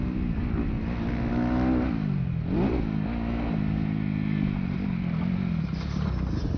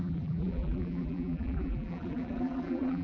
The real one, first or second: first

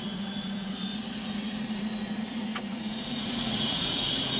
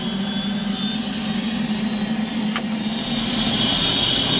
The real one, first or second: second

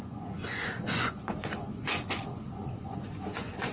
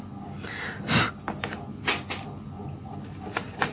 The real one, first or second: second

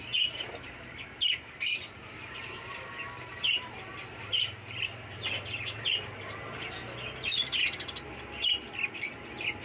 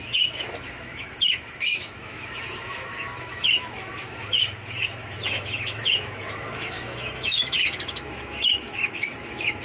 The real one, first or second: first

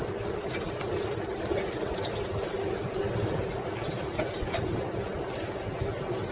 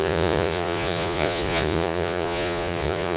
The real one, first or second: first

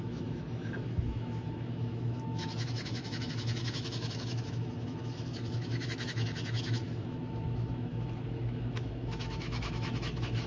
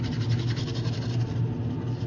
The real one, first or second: second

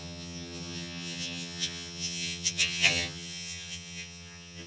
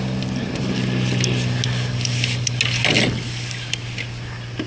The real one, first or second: second